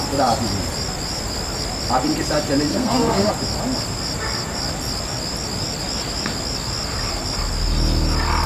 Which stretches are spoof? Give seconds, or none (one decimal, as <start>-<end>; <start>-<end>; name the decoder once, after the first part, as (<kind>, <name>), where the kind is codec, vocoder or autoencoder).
2.7-3.3 (codec, SNAC)